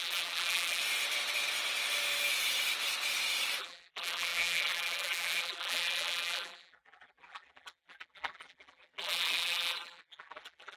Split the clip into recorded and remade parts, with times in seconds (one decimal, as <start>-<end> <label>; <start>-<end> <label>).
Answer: 0.0-0.8 remade; 0.8-3.6 recorded; 3.6-10.8 remade